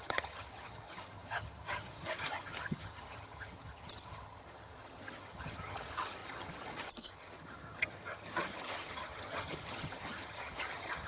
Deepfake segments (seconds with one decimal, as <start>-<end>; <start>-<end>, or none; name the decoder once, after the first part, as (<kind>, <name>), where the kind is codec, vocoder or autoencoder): 0.0-11.1 (vocoder, HiFi-GAN)